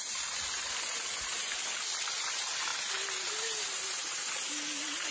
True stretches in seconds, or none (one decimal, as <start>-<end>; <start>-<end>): 0.0-5.1